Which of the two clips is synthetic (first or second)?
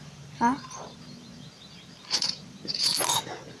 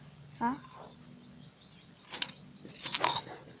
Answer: first